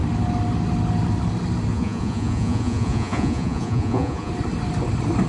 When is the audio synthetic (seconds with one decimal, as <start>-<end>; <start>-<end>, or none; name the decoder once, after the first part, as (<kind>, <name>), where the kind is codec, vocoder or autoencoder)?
1.7-4.3 (vocoder, Vocos)